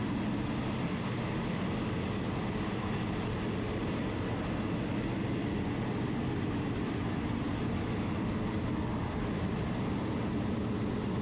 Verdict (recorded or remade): recorded